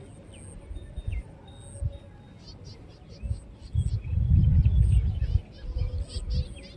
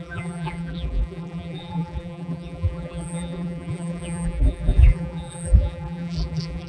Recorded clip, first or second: first